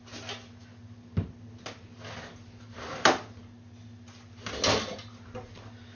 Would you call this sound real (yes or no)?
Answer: yes